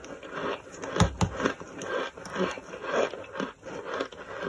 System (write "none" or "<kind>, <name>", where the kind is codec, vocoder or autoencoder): none